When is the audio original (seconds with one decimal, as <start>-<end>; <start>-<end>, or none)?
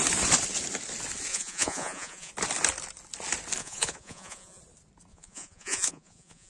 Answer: 0.0-1.3; 2.3-3.6; 4.6-5.1